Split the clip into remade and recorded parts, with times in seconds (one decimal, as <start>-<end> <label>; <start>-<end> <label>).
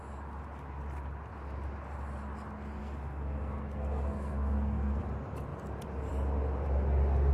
0.0-2.8 recorded; 2.8-5.0 remade; 5.0-7.3 recorded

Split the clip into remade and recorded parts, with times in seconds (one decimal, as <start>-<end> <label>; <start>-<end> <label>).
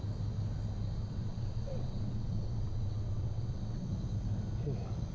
0.0-1.0 recorded; 1.0-3.9 remade; 3.9-5.1 recorded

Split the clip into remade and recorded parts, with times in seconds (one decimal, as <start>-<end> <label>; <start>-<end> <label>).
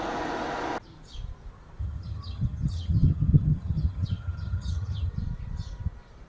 0.0-1.8 recorded; 1.8-5.1 remade; 5.1-6.3 recorded